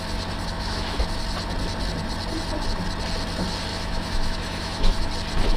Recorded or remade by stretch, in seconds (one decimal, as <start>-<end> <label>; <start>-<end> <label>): 0.0-0.5 recorded; 0.5-1.0 remade; 1.0-3.7 recorded; 3.7-5.1 remade; 5.1-5.6 recorded